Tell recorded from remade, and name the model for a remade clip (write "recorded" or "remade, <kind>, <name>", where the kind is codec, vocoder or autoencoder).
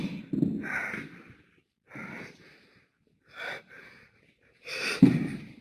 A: recorded